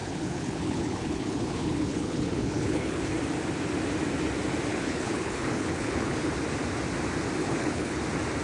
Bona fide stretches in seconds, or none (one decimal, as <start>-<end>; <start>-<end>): 3.1-4.7; 6.3-7.4; 8.0-8.4